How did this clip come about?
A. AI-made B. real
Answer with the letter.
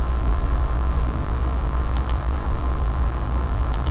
A